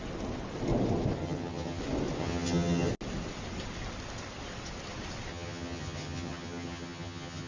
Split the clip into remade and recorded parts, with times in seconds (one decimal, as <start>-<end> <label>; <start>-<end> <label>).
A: 0.0-1.2 recorded; 1.2-1.8 remade; 1.8-2.2 recorded; 2.2-2.9 remade; 2.9-5.3 recorded; 5.3-7.5 remade